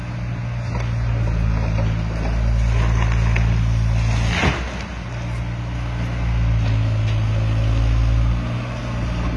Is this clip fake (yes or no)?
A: no